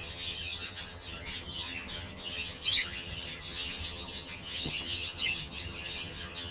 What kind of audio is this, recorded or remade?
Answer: remade